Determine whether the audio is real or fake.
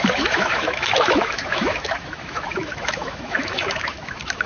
fake